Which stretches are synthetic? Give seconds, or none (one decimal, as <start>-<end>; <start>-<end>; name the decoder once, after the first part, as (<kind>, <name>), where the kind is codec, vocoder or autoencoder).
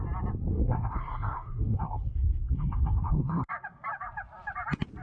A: 0.5-3.5 (codec, SNAC)